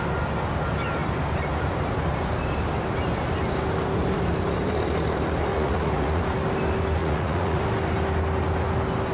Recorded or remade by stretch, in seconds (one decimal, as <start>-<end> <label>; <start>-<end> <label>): 0.0-5.5 recorded; 5.5-6.2 remade; 6.2-7.0 recorded; 7.0-7.6 remade; 7.6-9.1 recorded